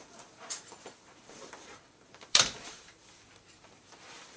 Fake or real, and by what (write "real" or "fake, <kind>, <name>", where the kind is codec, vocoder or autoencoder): fake, vocoder, BigVGAN v2